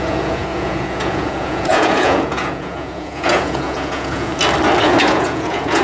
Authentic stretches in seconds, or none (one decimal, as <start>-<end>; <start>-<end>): 4.3-5.1